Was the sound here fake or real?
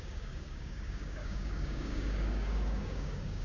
fake